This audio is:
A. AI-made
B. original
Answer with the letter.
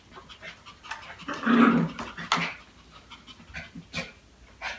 B